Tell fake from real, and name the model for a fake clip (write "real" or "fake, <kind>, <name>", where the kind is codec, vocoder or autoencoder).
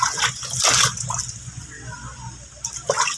real